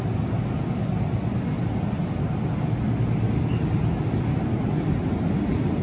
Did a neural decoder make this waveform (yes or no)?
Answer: no